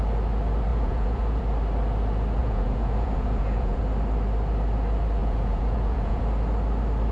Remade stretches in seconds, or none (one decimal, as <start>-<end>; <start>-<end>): 0.7-1.4; 2.4-3.8; 5.2-6.2